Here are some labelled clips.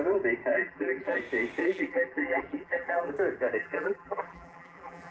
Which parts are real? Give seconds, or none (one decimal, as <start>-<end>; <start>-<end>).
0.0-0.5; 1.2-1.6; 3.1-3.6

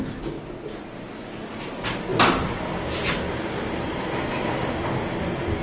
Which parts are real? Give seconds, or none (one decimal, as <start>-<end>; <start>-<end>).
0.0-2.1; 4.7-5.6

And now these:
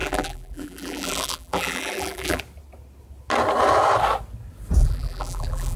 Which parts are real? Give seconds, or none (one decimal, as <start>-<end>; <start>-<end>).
2.4-4.8